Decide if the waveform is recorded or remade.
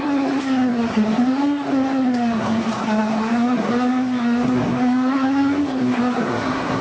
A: remade